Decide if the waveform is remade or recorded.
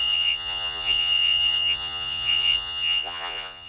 remade